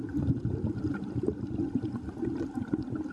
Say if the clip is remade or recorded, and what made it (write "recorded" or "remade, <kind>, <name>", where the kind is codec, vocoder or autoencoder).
recorded